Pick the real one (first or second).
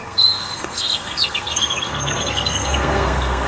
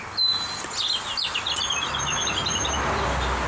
second